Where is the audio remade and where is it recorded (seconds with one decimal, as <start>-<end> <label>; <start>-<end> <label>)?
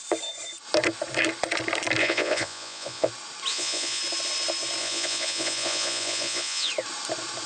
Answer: 0.0-2.0 recorded; 2.0-3.1 remade; 3.1-3.5 recorded; 3.5-4.0 remade; 4.0-4.8 recorded; 4.8-6.7 remade; 6.7-7.5 recorded